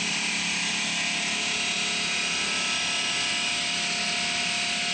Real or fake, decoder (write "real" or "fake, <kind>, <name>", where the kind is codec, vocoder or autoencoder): real